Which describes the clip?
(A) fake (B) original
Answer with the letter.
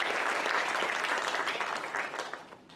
A